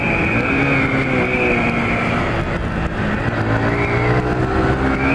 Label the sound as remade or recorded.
recorded